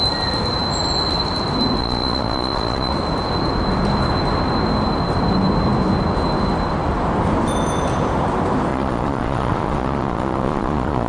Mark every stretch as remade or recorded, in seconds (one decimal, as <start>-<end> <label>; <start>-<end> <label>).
0.0-1.8 recorded; 1.8-2.9 remade; 2.9-8.7 recorded; 8.7-11.1 remade